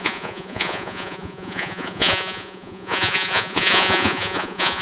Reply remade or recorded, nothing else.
remade